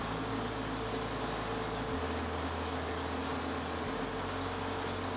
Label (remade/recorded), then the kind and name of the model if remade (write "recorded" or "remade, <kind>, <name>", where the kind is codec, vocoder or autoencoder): recorded